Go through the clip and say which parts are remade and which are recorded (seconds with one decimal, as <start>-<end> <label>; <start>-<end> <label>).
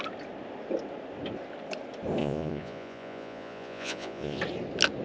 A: 0.0-2.2 recorded; 2.2-4.4 remade; 4.4-5.0 recorded